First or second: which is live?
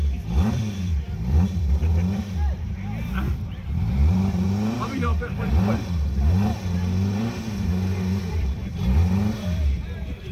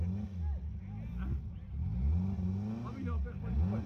second